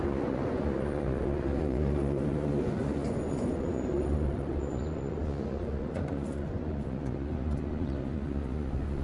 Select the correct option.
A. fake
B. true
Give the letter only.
A